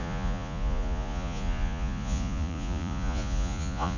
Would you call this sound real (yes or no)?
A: no